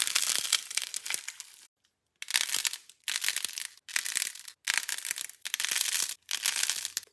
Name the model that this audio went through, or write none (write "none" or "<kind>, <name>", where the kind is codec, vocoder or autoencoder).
none